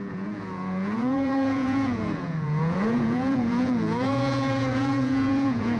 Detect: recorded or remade remade